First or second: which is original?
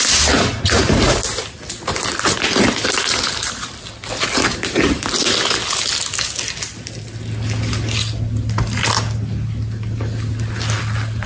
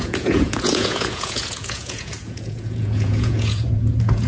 first